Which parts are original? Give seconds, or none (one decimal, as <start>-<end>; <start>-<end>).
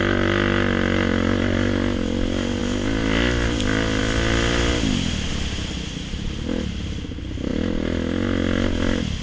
0.0-9.2